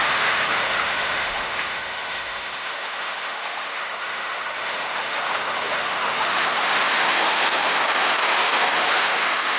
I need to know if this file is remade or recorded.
remade